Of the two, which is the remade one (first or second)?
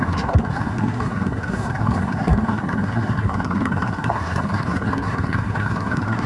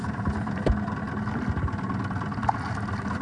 first